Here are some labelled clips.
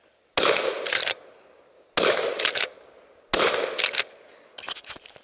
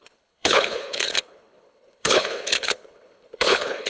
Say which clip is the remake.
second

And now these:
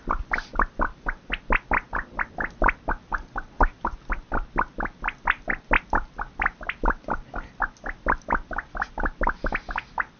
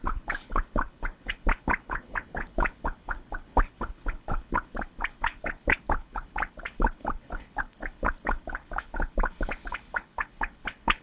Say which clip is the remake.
second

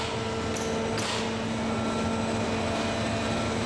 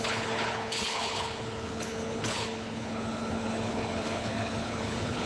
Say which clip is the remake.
second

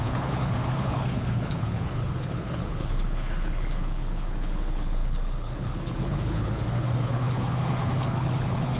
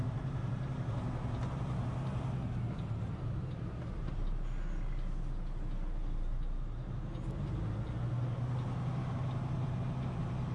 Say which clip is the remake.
first